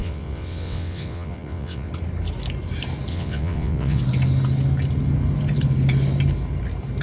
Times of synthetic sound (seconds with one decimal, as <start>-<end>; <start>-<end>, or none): 0.0-1.9; 3.1-4.0